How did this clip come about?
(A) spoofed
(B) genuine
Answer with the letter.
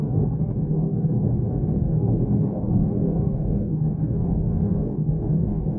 A